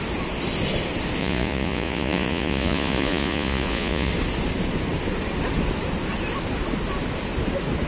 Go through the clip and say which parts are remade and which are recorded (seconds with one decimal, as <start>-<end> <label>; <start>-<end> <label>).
0.0-1.2 recorded; 1.2-4.1 remade; 4.1-7.9 recorded